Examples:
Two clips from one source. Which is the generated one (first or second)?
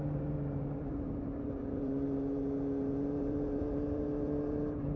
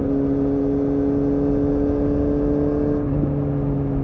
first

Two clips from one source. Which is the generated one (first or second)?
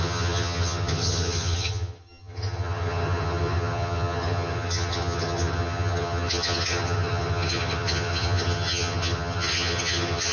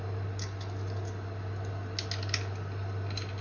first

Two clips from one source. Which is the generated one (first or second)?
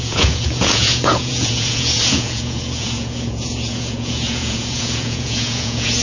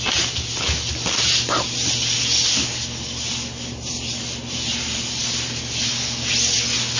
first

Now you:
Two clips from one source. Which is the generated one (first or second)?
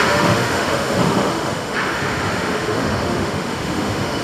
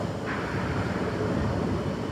first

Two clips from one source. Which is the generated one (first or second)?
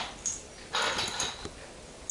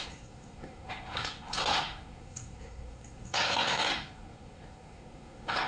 second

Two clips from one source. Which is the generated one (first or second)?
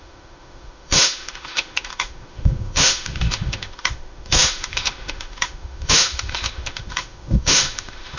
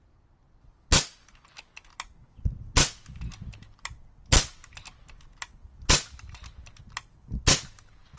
first